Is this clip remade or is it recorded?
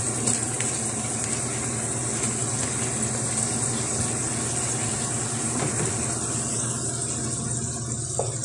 recorded